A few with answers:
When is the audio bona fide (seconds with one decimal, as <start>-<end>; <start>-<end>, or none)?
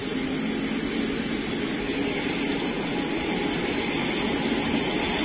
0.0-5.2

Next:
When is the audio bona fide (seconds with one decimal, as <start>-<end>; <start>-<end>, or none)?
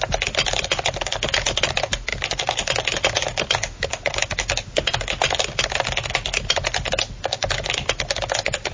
0.0-8.7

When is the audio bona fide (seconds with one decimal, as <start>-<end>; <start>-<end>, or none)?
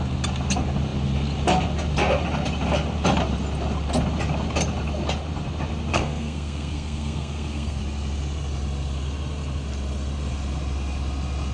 0.0-5.9; 7.8-11.5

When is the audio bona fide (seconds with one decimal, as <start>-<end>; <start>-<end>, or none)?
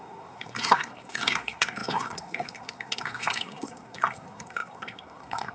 none